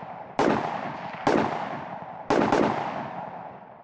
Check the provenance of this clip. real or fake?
real